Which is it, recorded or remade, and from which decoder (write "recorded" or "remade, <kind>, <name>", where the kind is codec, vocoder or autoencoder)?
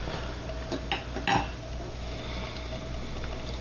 recorded